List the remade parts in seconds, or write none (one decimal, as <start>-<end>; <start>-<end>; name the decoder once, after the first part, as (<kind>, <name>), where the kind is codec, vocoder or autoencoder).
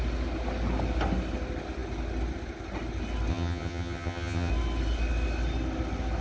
3.3-4.5 (vocoder, HiFi-GAN)